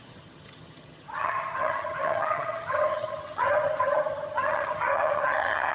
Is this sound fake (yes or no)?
yes